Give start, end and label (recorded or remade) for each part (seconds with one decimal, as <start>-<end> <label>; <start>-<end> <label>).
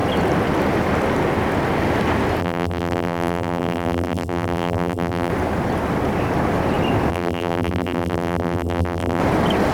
0.0-2.4 recorded; 2.4-5.3 remade; 5.3-7.1 recorded; 7.1-9.2 remade; 9.2-9.7 recorded